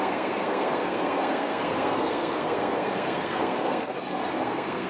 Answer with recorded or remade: remade